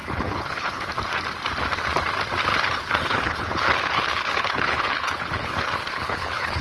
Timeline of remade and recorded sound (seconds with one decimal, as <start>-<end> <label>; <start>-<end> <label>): 0.0-0.9 remade; 0.9-2.5 recorded; 2.5-6.6 remade